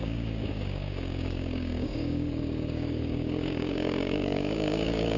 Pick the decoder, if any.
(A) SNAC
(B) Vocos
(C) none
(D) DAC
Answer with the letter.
D